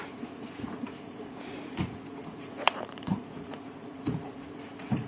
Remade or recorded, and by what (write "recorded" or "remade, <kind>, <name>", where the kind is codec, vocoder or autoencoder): remade, vocoder, Vocos